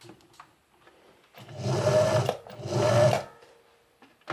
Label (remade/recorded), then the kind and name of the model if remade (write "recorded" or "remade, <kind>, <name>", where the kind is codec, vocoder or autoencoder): recorded